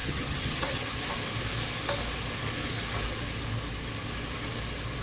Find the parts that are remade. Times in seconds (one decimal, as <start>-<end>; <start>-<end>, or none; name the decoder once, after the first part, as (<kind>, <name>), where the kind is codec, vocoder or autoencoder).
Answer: 0.0-1.0 (vocoder, HiFi-GAN)